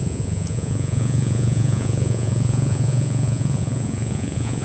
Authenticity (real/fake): fake